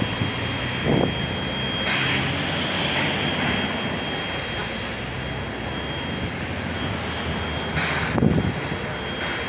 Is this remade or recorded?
recorded